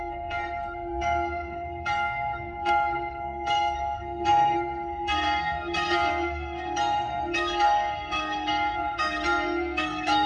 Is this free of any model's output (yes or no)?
no